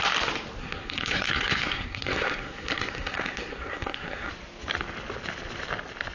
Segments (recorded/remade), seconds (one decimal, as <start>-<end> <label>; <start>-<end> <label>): 0.0-0.6 recorded; 0.6-4.3 remade; 4.3-6.1 recorded